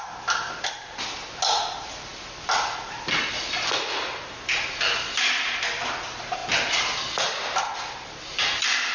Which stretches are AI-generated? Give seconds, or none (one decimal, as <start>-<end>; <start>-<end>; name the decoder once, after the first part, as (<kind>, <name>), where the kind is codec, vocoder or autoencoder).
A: none